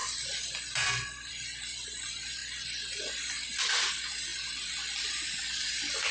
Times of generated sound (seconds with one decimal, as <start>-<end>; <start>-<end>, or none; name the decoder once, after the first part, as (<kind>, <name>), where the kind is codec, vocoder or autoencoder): none